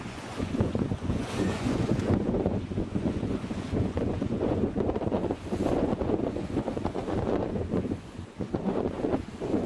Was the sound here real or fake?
fake